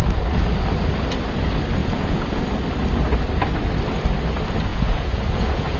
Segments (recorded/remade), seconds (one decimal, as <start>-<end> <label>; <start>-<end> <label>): 0.0-1.8 recorded; 1.8-2.4 remade; 2.4-4.7 recorded; 4.7-5.8 remade